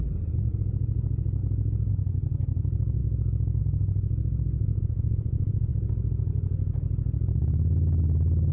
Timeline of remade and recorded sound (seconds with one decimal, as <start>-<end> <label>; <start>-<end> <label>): 0.0-4.6 recorded; 4.6-5.7 remade; 5.7-8.5 recorded